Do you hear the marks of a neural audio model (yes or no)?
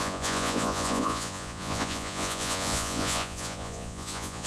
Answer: yes